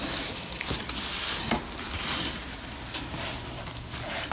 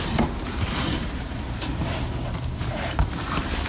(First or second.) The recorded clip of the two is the first